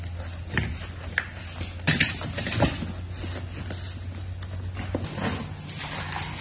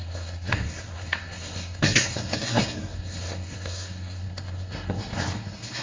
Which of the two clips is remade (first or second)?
second